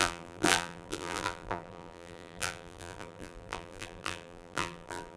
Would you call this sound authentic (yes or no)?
no